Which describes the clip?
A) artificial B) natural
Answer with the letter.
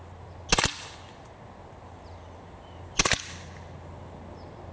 B